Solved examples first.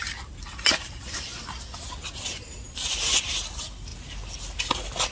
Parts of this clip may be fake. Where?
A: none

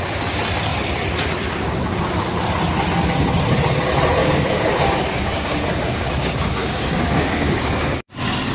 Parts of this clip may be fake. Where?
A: 4.2-8.1 (codec, DAC)

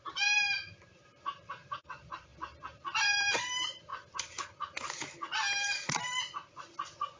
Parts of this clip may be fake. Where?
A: 0.0-2.3 (vocoder, BigVGAN v2); 3.0-3.9

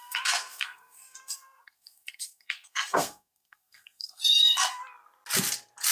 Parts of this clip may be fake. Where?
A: 0.0-4.8 (codec, SNAC)

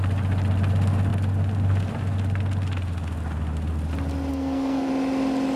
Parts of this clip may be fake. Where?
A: 4.3-4.9 (codec, SNAC)